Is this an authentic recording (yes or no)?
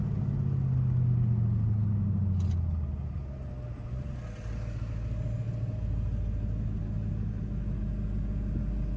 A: yes